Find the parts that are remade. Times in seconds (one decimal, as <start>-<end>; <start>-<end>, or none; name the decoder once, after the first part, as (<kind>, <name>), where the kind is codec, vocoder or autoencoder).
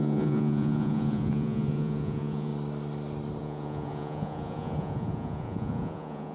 0.0-2.5 (vocoder, Vocos); 3.4-6.3